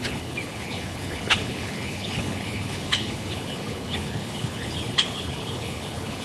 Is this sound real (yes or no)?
no